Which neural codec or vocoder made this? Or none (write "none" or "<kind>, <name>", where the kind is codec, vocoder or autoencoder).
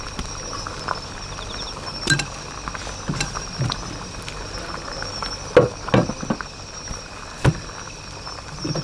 none